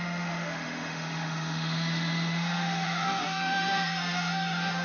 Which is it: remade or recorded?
remade